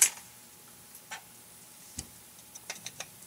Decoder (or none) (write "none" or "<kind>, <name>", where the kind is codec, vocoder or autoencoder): vocoder, BigVGAN v2